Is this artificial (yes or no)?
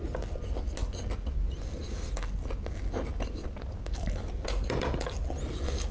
no